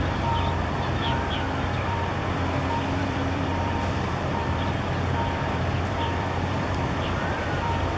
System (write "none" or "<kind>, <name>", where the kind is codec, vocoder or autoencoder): vocoder, BigVGAN v2